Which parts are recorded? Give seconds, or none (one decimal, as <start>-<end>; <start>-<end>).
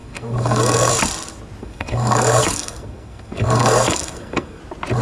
0.9-1.6; 4.6-5.0